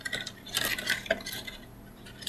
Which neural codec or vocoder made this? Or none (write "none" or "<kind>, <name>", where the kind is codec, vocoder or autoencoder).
none